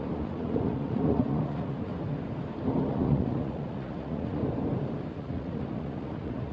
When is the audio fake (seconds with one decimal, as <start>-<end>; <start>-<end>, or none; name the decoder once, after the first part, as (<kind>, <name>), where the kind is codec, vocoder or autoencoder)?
0.0-1.9 (vocoder, Vocos); 2.9-4.4; 5.1-6.5

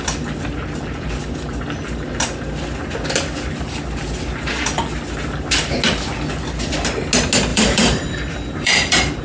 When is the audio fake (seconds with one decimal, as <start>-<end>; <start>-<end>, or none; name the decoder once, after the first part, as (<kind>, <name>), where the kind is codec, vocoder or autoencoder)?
7.5-9.2 (vocoder, BigVGAN v2)

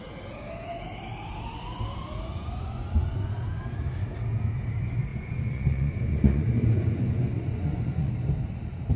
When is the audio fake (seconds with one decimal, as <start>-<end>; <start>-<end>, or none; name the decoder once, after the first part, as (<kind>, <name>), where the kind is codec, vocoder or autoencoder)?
2.3-3.4 (vocoder, Vocos); 5.1-8.1